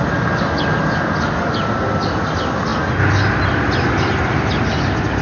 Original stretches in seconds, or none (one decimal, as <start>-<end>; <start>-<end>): 0.0-5.2